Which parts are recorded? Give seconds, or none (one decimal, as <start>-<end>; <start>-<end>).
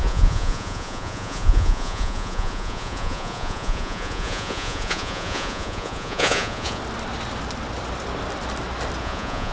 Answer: 6.8-9.0